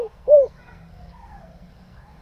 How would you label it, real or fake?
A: fake